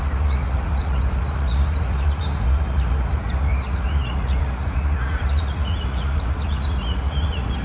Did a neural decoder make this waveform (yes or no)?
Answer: yes